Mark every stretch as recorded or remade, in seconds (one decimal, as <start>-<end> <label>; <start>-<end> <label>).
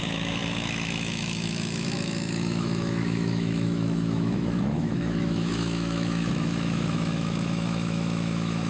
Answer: 0.0-8.7 remade